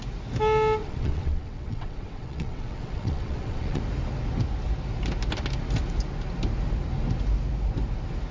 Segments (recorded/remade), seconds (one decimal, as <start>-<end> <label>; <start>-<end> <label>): 0.0-0.8 recorded; 0.8-3.8 remade; 3.8-8.3 recorded